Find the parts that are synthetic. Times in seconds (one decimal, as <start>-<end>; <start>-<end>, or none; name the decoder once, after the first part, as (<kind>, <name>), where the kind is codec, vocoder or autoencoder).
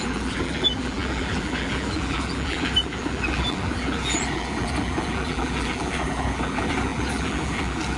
0.0-8.0 (vocoder, BigVGAN v2)